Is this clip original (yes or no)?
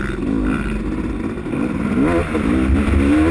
yes